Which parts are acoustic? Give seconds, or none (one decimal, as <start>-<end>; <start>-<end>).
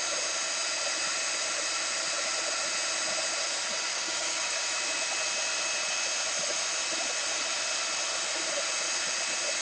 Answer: 0.0-3.9; 4.6-9.6